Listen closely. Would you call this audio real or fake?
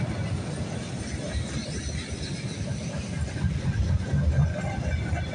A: real